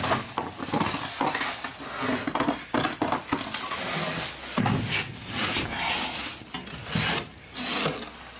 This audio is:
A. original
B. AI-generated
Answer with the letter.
A